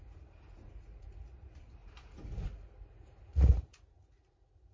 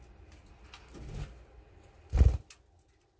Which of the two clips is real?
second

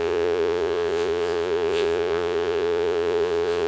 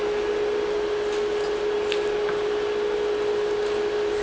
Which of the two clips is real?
second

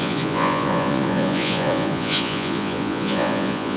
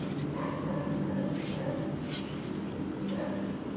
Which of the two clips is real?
second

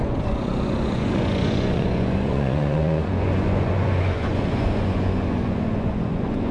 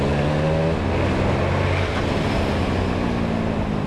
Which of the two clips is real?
second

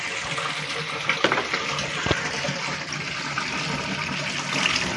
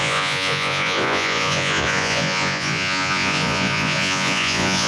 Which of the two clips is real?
first